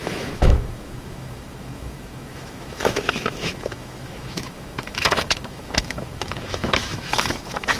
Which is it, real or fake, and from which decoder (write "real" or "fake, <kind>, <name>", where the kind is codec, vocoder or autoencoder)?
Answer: fake, autoencoder, DAC-VAE